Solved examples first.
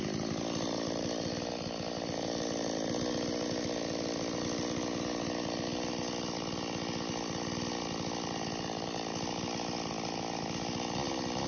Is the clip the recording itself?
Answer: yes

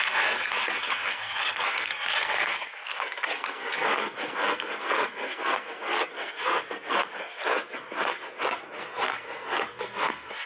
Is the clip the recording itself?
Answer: no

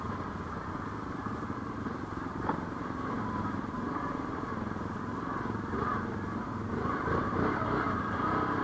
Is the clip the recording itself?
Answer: no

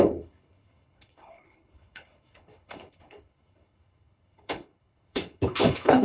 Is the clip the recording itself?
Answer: no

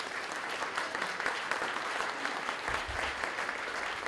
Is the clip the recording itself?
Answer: no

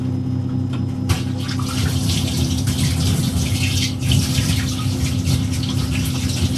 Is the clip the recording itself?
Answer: yes